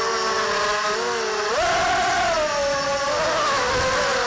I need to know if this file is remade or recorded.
recorded